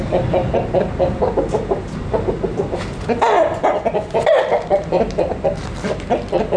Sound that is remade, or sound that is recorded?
recorded